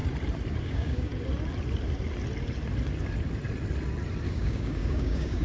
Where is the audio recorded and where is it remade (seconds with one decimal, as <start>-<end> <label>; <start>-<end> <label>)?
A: 0.0-0.6 recorded; 0.6-1.1 remade; 1.1-4.3 recorded; 4.3-5.4 remade